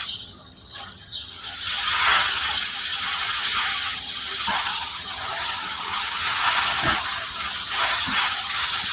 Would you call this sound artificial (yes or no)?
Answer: yes